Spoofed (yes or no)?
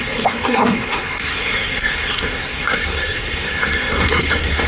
yes